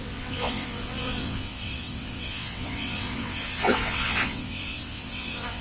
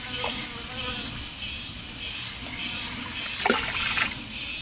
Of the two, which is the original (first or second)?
second